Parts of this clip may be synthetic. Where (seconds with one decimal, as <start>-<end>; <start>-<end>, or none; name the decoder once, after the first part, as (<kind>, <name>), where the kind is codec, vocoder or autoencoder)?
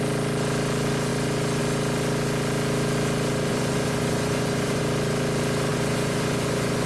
3.5-4.8 (vocoder, Vocos); 5.7-6.9